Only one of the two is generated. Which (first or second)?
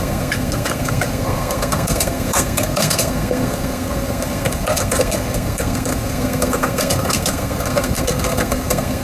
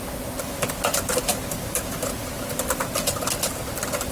first